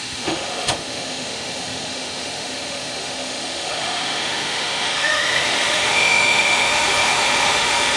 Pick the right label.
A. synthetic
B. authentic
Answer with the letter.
A